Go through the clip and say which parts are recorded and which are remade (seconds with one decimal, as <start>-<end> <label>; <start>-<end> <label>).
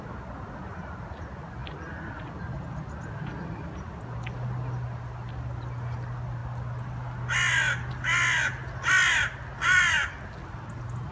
0.0-11.1 recorded